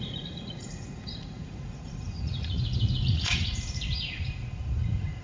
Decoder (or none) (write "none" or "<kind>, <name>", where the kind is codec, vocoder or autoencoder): vocoder, Vocos